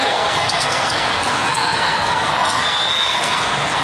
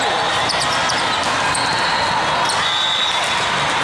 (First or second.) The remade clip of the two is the first